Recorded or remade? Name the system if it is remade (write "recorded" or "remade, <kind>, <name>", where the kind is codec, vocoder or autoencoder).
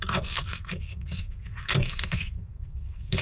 remade, codec, SNAC